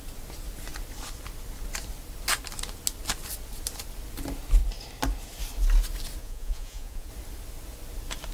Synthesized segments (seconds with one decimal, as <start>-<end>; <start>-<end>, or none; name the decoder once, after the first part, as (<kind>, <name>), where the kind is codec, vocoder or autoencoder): 6.2-7.1 (vocoder, Vocos)